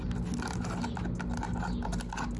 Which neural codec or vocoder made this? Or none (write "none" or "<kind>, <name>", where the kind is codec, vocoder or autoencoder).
none